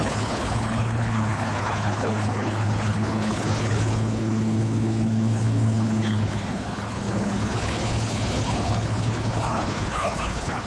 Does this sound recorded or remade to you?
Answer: remade